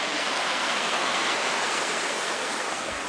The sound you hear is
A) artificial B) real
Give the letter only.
A